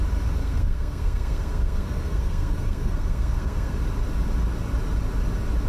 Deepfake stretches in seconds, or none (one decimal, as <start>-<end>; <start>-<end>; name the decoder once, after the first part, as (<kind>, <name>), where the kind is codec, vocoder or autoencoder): 0.4-3.8 (codec, SNAC)